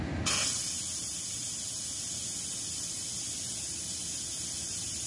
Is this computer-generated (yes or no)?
no